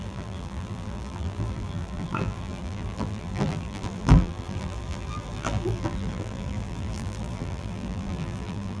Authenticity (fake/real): fake